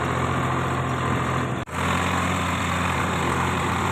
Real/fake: real